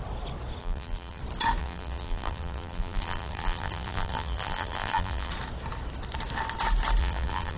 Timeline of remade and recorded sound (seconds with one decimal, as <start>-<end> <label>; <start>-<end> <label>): 0.0-0.6 recorded; 0.6-1.2 remade; 1.2-1.6 recorded; 1.6-5.3 remade; 5.3-7.0 recorded; 7.0-7.6 remade